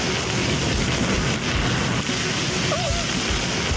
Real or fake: real